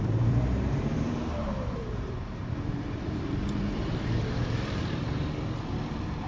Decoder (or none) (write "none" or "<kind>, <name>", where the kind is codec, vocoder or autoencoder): vocoder, BigVGAN v2